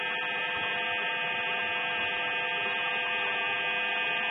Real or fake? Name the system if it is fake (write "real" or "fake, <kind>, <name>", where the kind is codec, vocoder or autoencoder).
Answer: real